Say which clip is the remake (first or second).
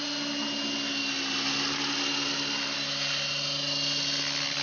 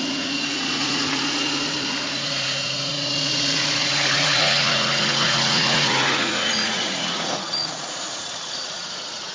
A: second